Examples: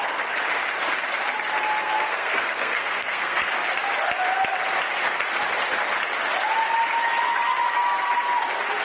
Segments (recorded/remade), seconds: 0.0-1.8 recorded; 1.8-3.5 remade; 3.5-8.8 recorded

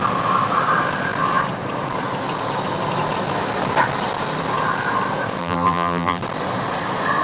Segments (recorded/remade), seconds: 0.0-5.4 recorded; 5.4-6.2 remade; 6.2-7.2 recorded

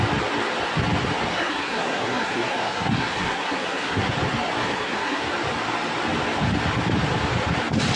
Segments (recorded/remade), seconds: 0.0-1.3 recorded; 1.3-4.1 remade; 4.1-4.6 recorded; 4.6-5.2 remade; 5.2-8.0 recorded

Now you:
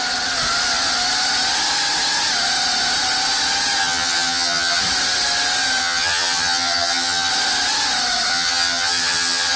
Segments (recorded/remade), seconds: 0.0-3.8 recorded; 3.8-4.8 remade; 4.8-5.8 recorded; 5.8-7.3 remade; 7.3-8.3 recorded; 8.3-9.6 remade